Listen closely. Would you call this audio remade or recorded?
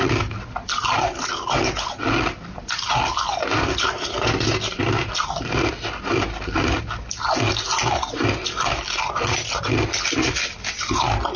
recorded